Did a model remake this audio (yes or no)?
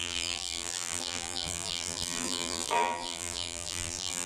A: yes